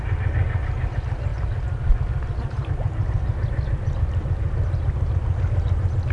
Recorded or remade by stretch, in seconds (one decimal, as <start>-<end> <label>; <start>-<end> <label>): 0.0-6.1 recorded